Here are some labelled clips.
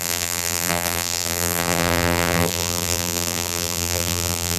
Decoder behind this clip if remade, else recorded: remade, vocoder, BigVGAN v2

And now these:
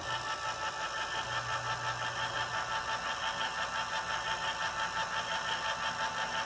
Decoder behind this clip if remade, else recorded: recorded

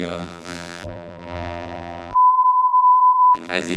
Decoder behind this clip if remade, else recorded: remade, vocoder, BigVGAN v2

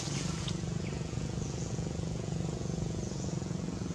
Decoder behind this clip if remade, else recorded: remade, vocoder, Vocos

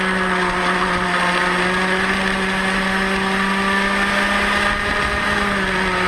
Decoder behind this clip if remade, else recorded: recorded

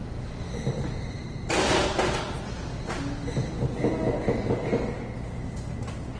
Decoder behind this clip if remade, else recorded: recorded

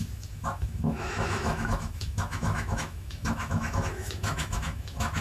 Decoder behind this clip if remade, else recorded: remade, autoencoder, DAC-VAE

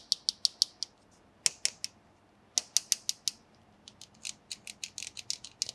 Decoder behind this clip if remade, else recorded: recorded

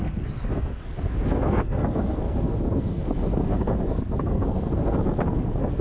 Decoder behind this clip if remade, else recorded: remade, codec, SNAC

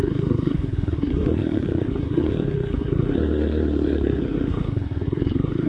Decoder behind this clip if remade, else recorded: remade, codec, SNAC